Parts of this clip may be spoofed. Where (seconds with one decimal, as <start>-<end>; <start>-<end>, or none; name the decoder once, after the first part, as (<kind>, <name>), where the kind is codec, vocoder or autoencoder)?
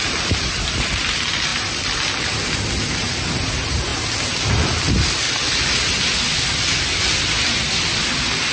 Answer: none